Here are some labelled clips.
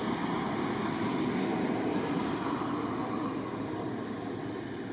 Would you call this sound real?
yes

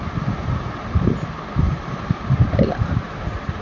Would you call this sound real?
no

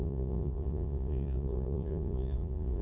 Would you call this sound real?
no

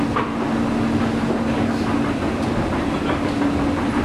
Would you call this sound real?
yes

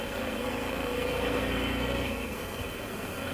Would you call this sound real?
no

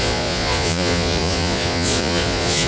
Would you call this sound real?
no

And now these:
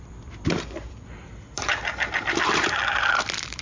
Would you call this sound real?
no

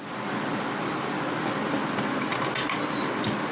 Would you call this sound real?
yes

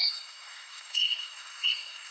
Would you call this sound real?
no